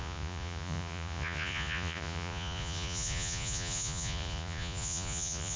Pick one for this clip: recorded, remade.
remade